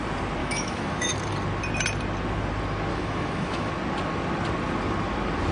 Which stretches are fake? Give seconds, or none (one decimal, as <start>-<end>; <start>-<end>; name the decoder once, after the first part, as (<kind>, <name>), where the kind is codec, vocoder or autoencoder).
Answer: 0.4-1.1 (autoencoder, DAC-VAE); 2.9-3.7